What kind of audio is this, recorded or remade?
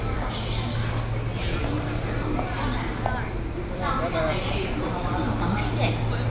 recorded